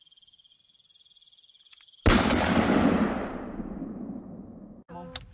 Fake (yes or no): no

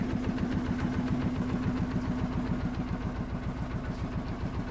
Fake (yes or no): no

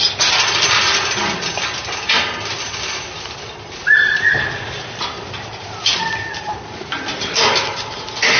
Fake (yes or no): no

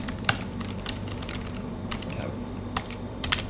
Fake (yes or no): yes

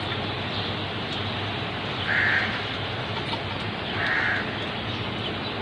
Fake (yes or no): no